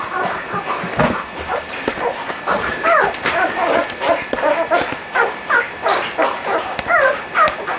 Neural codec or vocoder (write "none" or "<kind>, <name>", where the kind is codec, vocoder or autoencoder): none